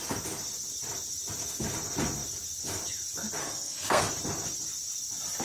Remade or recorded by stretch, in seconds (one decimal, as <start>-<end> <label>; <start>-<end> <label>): 0.0-3.4 recorded; 3.4-4.0 remade; 4.0-5.4 recorded